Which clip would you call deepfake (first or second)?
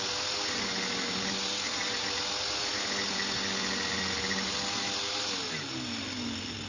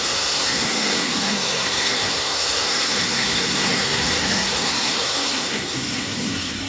second